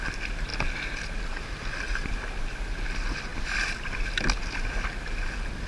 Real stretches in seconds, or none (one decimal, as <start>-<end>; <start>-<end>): 0.0-5.7